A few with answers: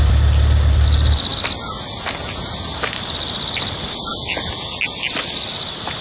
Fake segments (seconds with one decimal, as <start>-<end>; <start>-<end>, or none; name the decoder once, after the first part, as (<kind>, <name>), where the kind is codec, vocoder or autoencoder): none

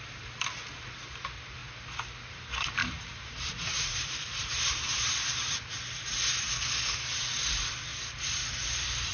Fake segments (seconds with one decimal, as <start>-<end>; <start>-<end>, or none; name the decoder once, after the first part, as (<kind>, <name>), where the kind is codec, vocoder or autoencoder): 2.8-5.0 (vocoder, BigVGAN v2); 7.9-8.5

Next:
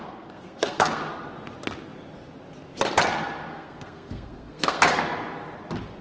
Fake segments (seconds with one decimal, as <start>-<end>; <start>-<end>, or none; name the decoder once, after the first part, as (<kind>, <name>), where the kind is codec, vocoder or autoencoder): 0.0-1.0 (codec, SNAC); 3.5-5.0